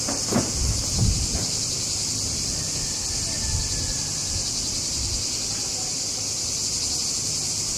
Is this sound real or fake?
fake